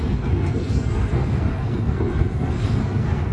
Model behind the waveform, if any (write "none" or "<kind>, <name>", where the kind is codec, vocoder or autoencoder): codec, SNAC